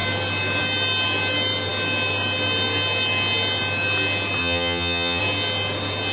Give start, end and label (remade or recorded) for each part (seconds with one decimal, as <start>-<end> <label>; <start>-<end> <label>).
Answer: 0.0-4.4 recorded; 4.4-5.2 remade; 5.2-6.1 recorded